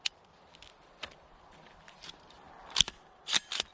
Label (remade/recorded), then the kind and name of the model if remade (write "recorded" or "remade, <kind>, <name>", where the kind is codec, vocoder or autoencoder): recorded